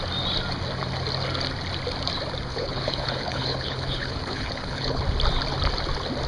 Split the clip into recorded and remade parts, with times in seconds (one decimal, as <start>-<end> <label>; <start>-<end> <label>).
0.0-2.5 recorded; 2.5-5.0 remade; 5.0-6.3 recorded